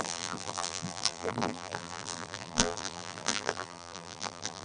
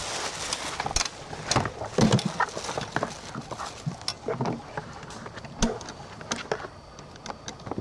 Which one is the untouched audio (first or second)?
second